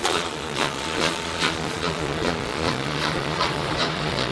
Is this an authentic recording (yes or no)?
no